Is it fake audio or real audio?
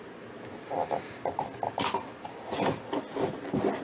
real